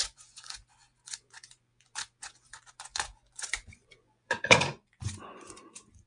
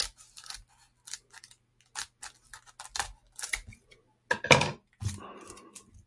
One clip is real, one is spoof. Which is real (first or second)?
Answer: second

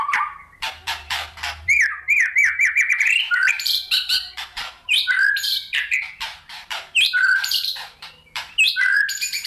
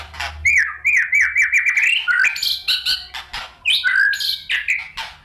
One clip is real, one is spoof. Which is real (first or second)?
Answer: second